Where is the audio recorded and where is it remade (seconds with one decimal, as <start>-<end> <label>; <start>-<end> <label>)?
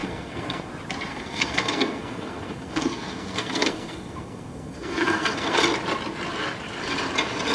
0.0-0.7 remade; 0.7-1.1 recorded; 1.1-5.6 remade; 5.6-7.5 recorded